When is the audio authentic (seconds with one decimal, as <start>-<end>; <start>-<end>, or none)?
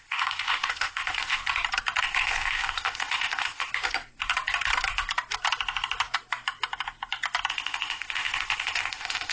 1.4-2.0; 3.7-7.5